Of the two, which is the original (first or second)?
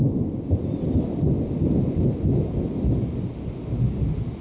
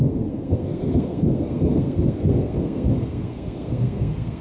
first